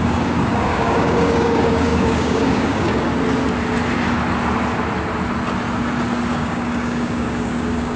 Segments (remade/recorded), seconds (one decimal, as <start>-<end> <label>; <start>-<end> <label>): 0.0-3.1 remade; 3.1-6.3 recorded; 6.3-8.0 remade